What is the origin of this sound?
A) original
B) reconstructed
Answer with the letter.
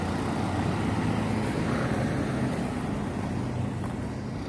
A